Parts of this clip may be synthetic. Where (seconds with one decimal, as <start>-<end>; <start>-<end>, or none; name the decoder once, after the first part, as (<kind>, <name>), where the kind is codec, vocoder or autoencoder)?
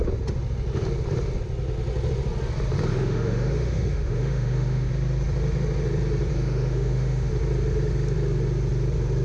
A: 2.9-4.9 (autoencoder, DAC-VAE); 6.3-7.3